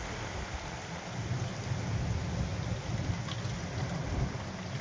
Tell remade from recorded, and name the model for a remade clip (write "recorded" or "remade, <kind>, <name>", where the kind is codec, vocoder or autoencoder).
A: recorded